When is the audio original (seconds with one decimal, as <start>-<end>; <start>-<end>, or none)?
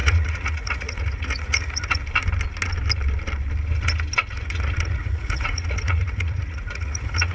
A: 2.0-4.3